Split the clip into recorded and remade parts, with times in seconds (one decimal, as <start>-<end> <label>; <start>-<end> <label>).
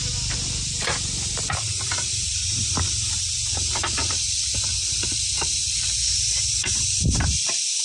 0.0-1.7 recorded; 1.7-7.8 remade